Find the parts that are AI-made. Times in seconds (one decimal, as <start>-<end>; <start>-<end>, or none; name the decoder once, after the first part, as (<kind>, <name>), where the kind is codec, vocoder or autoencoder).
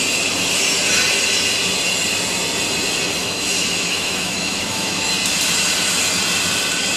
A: 3.2-5.1 (autoencoder, DAC-VAE)